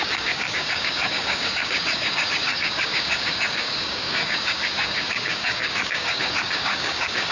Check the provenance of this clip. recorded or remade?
remade